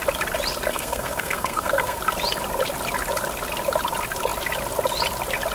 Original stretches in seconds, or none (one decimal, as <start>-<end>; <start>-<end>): 0.0-0.7; 2.0-5.5